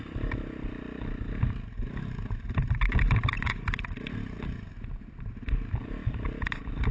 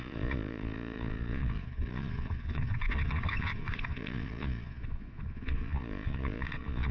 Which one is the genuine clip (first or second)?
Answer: first